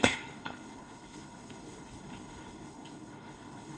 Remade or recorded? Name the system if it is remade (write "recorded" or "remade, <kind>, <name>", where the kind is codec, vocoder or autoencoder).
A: remade, codec, HILCodec